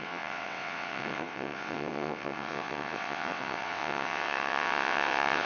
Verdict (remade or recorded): remade